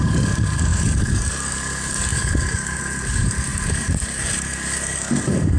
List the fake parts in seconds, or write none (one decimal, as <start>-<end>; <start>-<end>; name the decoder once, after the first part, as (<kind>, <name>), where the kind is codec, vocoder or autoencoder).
0.0-5.6 (codec, DAC)